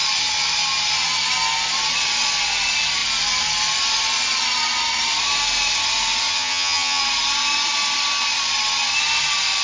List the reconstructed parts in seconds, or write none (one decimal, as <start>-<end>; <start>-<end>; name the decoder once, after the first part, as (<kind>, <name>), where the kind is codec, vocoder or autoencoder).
6.3-7.0 (vocoder, HiFi-GAN)